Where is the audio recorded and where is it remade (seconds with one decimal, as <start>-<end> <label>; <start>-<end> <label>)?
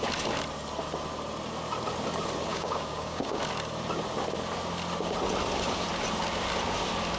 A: 0.0-2.5 recorded; 2.5-3.4 remade; 3.4-7.2 recorded